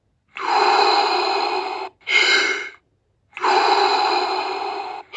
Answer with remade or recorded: recorded